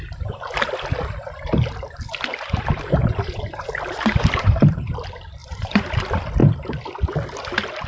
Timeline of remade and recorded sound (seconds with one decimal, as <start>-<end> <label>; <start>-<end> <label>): 0.0-2.3 recorded; 2.3-4.9 remade; 4.9-5.4 recorded; 5.4-5.9 remade; 5.9-7.9 recorded